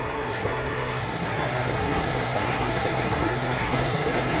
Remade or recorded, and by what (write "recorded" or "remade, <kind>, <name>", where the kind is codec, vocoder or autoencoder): remade, codec, SNAC